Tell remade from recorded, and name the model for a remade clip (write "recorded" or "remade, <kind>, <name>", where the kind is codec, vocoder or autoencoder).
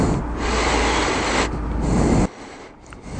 recorded